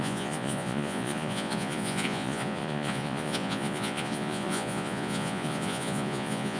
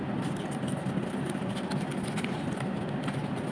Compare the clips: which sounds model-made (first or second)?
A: first